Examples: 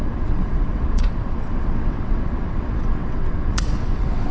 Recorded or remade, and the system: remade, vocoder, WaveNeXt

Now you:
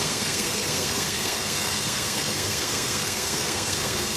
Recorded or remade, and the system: remade, codec, SNAC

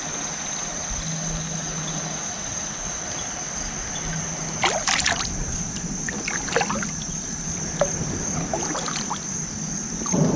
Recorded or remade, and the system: recorded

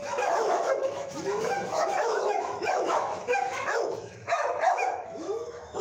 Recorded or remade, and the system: remade, autoencoder, DAC-VAE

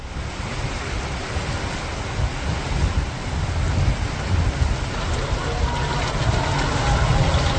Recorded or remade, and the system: recorded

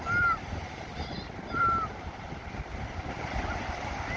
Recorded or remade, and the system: recorded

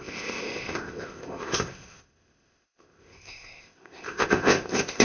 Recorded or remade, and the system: remade, codec, ZipCodec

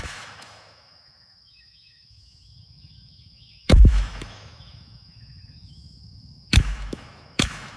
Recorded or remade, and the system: remade, autoencoder, DAC-VAE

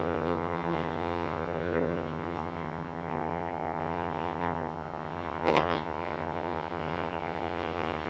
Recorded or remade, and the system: remade, vocoder, HiFi-GAN